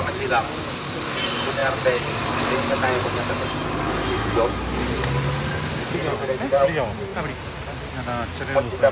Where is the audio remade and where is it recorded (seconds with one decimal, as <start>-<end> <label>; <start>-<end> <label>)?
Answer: 0.0-8.9 recorded